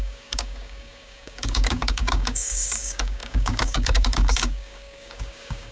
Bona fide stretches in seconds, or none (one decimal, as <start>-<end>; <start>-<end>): none